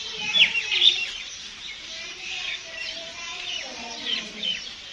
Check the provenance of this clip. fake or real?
fake